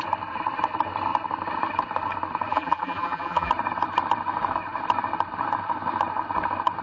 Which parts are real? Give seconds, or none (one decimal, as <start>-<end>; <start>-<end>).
0.0-2.5; 3.5-6.8